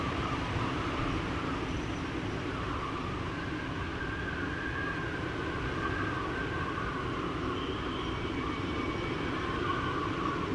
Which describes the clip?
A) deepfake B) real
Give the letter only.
B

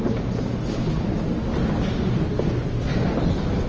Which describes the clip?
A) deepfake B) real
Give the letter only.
B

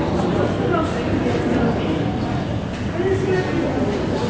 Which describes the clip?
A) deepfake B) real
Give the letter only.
B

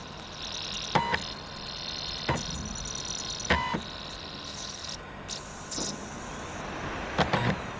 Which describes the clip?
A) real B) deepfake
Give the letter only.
A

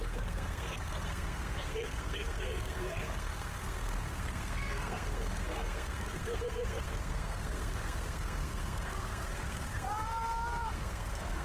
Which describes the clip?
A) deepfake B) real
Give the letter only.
A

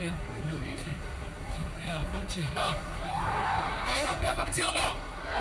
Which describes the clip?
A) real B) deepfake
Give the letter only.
B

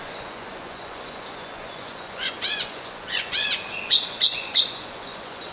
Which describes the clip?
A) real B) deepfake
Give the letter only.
B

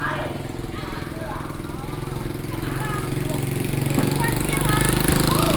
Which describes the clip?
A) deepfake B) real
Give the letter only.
B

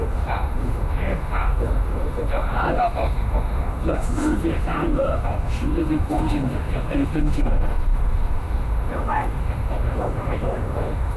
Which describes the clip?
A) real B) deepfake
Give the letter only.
B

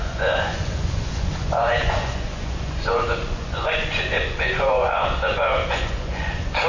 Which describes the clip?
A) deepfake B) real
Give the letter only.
A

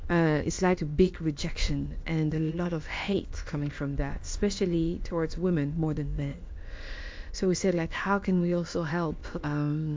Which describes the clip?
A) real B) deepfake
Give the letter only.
B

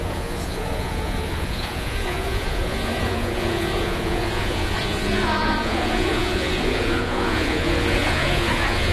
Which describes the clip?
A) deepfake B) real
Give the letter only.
A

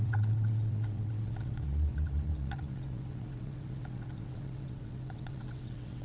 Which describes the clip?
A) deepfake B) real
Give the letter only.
A